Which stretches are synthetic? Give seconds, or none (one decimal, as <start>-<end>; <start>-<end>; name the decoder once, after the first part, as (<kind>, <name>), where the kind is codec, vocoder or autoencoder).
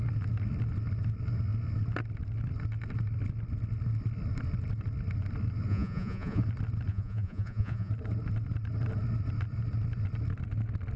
5.7-6.4 (vocoder, Vocos); 6.9-7.9